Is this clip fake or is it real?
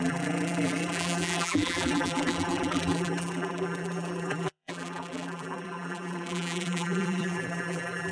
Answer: fake